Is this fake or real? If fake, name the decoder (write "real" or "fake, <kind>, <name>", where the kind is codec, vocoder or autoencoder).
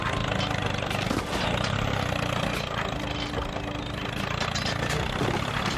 real